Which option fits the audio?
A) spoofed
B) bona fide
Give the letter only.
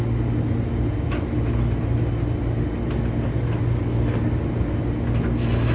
B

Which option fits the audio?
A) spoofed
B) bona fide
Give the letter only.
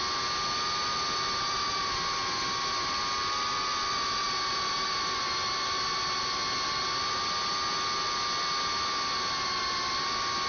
B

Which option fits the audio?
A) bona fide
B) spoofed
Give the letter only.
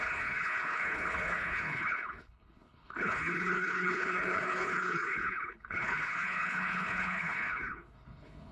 B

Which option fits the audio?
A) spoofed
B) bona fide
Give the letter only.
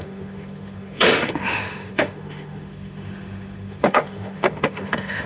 A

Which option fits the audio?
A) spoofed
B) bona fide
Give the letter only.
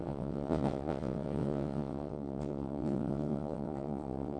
A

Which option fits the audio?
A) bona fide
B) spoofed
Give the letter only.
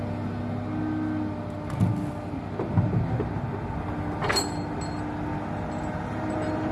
A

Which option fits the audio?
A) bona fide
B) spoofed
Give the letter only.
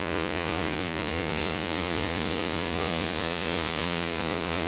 B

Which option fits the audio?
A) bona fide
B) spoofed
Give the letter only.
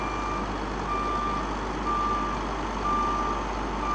A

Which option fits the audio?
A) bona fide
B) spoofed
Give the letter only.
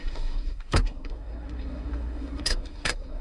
B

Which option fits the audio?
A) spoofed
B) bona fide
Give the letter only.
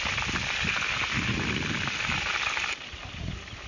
B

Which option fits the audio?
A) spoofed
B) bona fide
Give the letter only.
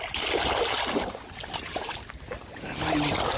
B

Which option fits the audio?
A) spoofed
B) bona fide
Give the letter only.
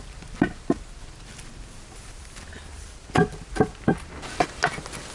B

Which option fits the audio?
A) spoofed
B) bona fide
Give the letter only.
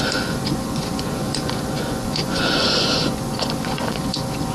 A